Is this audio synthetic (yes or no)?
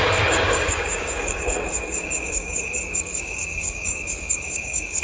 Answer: yes